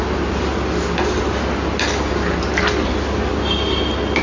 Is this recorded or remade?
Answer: recorded